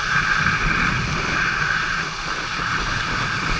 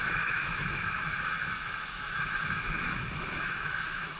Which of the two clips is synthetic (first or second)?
second